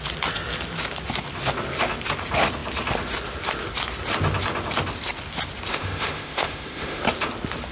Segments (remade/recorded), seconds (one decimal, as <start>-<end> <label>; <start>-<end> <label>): 0.0-5.7 recorded; 5.7-7.0 remade; 7.0-7.7 recorded